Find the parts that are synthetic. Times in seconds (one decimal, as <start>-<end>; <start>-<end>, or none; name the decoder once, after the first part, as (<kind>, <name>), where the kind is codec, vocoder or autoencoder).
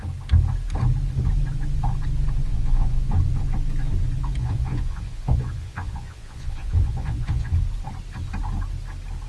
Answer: 2.5-3.1 (vocoder, Vocos); 4.4-7.5